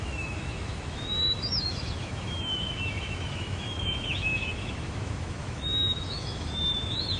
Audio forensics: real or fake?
fake